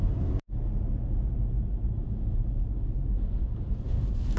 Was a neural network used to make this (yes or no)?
no